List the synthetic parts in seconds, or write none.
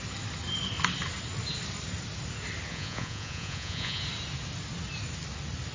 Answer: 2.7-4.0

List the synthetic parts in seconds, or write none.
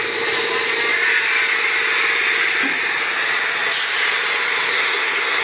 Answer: 4.7-5.4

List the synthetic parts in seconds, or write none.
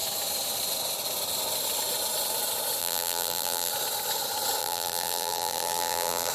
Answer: 2.8-3.7; 4.6-6.3